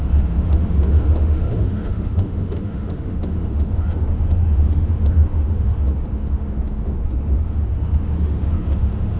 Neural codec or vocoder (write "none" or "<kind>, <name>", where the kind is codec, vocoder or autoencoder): autoencoder, DAC-VAE